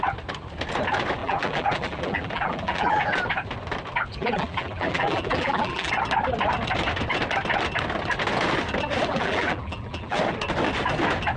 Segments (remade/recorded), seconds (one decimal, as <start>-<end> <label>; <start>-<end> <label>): 0.0-1.2 recorded; 1.2-3.1 remade; 3.1-4.2 recorded; 4.2-5.9 remade; 5.9-9.1 recorded; 9.1-10.2 remade; 10.2-11.4 recorded